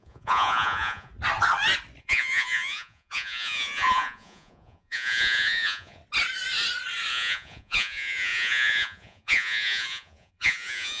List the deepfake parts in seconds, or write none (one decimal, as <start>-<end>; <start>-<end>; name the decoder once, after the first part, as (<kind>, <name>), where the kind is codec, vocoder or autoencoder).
0.0-1.1 (vocoder, Vocos); 2.0-6.0; 7.1-11.0